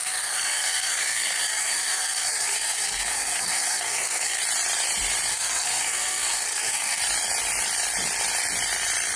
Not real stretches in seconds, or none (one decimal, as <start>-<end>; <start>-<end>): 0.0-4.4; 5.3-7.0